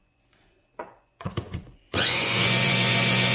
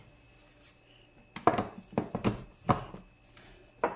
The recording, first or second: second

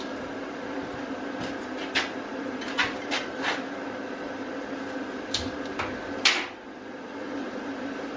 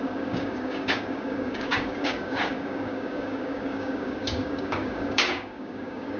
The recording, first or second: first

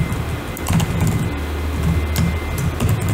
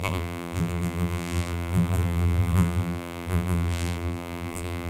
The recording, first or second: first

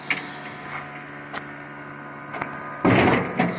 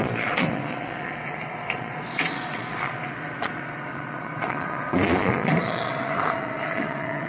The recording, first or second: first